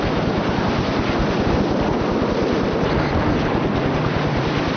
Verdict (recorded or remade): recorded